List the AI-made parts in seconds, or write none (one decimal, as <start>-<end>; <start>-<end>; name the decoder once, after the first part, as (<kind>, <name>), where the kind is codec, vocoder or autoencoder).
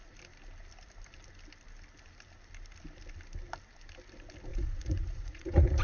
4.5-5.8 (vocoder, Vocos)